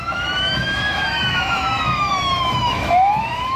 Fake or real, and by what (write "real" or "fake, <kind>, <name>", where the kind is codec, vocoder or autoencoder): fake, autoencoder, DAC-VAE